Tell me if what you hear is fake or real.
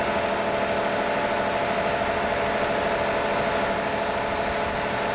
real